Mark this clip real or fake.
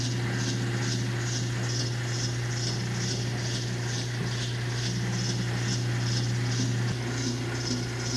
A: real